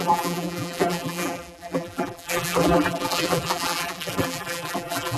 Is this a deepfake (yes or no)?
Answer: yes